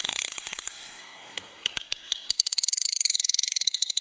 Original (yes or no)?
no